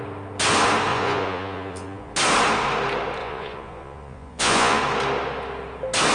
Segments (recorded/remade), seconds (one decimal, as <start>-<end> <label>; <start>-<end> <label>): 0.0-0.9 recorded; 0.9-2.1 remade; 2.1-3.2 recorded; 3.2-4.8 remade; 4.8-6.1 recorded